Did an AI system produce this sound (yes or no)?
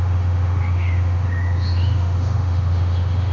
yes